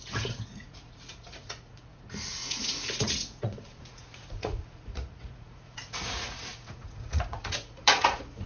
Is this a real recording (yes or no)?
no